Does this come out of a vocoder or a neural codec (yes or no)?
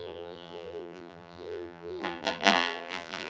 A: yes